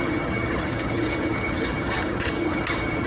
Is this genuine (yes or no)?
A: no